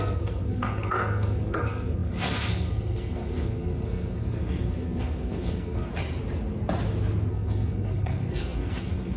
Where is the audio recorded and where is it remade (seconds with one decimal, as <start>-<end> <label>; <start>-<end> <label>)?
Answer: 0.0-5.9 remade; 5.9-7.3 recorded; 7.3-9.2 remade